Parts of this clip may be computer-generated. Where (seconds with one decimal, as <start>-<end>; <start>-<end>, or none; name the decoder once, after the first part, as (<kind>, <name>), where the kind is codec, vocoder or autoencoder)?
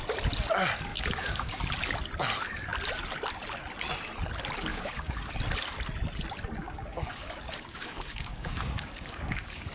0.9-1.6 (codec, DAC); 4.7-5.3; 6.6-9.7